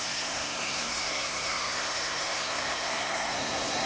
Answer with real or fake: fake